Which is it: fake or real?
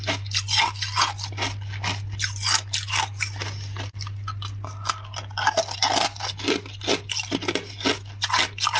real